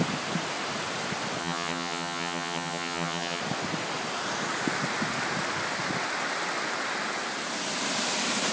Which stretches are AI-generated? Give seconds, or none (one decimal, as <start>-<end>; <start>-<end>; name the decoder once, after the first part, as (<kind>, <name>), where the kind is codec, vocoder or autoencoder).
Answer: 1.4-3.4 (vocoder, HiFi-GAN)